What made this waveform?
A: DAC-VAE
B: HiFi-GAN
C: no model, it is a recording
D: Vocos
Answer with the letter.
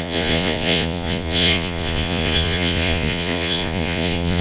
D